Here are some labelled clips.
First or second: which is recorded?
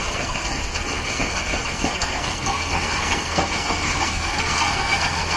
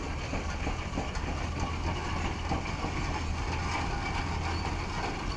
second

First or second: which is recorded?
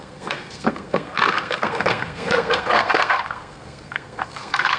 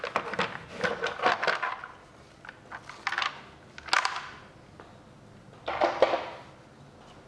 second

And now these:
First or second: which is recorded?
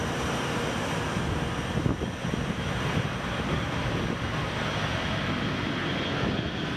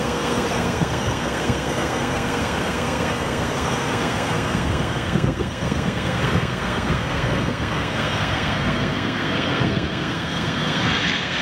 first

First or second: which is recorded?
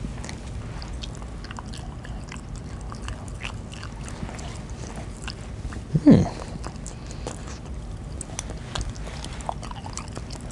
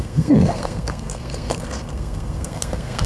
first